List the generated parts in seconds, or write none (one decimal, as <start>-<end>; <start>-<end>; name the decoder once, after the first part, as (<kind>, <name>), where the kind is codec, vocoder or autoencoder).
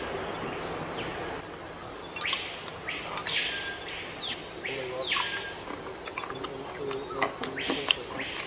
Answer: none